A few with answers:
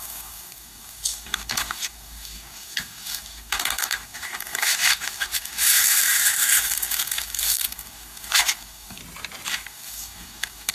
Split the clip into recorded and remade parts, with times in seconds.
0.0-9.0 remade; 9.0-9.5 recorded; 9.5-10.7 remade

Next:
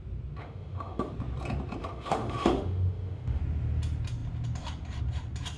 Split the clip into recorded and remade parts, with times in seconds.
0.0-0.4 recorded; 0.4-1.1 remade; 1.1-1.8 recorded; 1.8-3.4 remade; 3.4-5.6 recorded